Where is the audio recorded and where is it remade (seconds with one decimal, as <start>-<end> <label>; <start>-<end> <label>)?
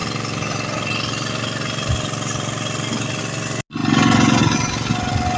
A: 0.0-3.8 recorded; 3.8-4.4 remade; 4.4-5.4 recorded